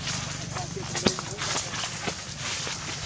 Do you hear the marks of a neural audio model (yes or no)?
no